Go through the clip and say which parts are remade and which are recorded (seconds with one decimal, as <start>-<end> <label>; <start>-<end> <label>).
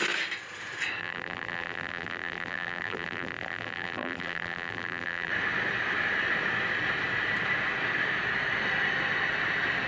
0.0-1.0 recorded; 1.0-5.3 remade; 5.3-9.9 recorded